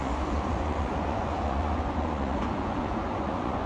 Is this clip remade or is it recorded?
remade